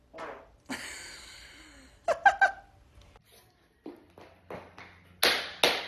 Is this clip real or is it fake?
real